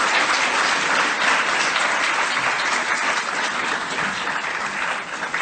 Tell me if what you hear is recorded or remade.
recorded